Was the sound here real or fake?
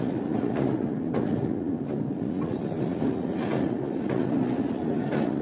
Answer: fake